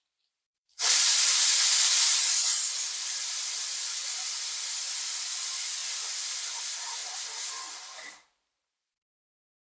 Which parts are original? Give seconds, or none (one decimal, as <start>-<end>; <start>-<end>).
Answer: 5.8-6.5; 7.0-7.8